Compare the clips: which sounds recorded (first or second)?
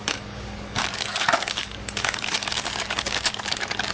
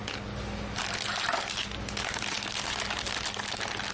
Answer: second